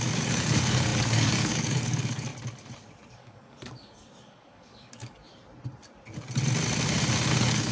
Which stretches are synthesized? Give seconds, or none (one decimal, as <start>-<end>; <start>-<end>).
0.0-2.3; 3.1-5.2; 7.3-7.7

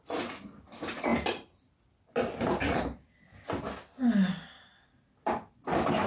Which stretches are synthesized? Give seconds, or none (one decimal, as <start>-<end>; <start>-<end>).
none

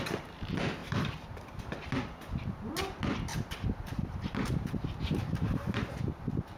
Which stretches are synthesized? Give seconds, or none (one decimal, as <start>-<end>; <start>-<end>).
0.8-1.6; 3.3-6.0

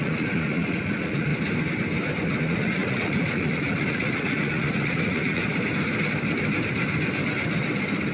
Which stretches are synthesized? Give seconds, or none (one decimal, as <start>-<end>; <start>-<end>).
0.0-1.3; 2.4-5.4

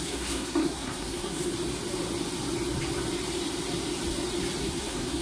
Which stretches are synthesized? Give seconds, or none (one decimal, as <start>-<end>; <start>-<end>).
0.0-1.5; 4.6-5.2

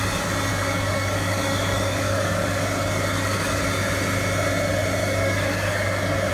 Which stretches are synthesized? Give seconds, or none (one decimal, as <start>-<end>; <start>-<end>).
0.5-3.6; 5.0-6.3

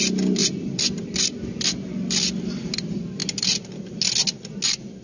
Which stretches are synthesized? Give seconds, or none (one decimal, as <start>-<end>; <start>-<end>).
none